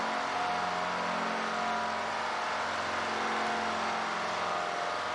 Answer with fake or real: real